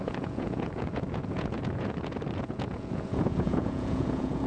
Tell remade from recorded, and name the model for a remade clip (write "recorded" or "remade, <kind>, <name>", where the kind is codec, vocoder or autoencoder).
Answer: remade, vocoder, Vocos